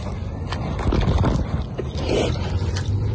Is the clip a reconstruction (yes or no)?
no